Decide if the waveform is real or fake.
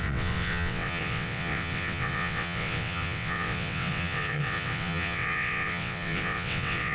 fake